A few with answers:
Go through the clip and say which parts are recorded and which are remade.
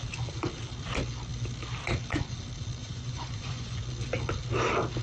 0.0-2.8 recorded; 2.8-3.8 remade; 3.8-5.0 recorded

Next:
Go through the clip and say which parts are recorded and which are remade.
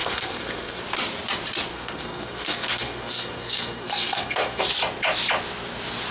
0.0-0.8 remade; 0.8-1.7 recorded; 1.7-4.6 remade; 4.6-6.1 recorded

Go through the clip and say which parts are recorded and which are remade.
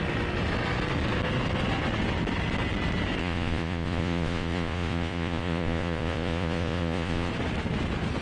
0.0-3.2 recorded; 3.2-7.3 remade; 7.3-8.2 recorded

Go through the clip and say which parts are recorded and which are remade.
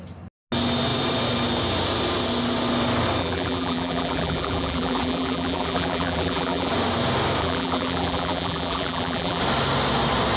0.0-3.2 recorded; 3.2-6.7 remade; 6.7-7.4 recorded; 7.4-9.4 remade; 9.4-10.4 recorded